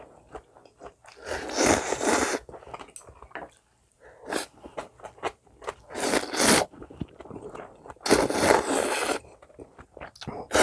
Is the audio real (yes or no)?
yes